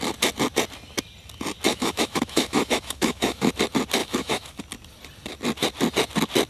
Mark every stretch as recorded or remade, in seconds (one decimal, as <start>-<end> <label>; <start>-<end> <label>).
0.0-1.7 recorded; 1.7-3.5 remade; 3.5-4.0 recorded; 4.0-4.6 remade; 4.6-6.5 recorded